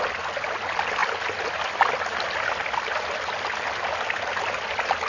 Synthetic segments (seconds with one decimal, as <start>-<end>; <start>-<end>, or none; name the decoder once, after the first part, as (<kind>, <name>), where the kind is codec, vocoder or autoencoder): none